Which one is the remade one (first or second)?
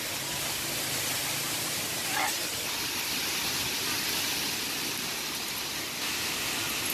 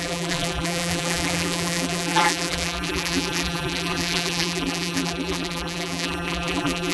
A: second